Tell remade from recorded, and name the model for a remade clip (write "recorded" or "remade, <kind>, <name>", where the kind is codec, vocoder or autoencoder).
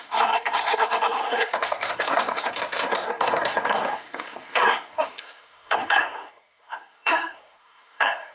remade, codec, SNAC